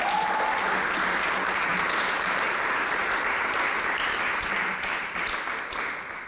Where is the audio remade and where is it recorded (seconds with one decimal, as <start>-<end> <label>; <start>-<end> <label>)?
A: 0.0-1.7 recorded; 1.7-5.5 remade; 5.5-6.3 recorded